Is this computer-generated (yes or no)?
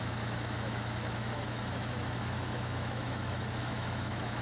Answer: yes